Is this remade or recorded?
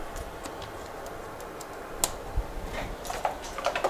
recorded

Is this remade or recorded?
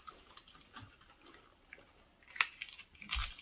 recorded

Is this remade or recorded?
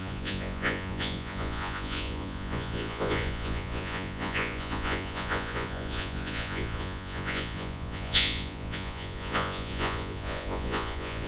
remade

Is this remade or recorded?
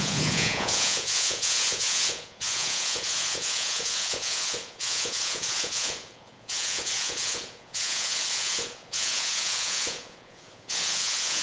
remade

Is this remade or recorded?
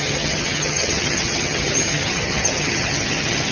remade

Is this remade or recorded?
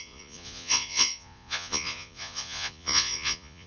remade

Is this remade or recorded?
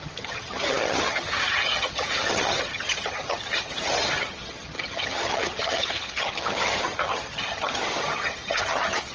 remade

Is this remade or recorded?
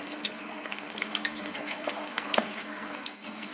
remade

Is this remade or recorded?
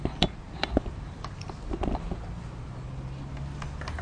recorded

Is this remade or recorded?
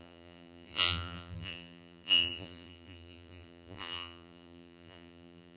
remade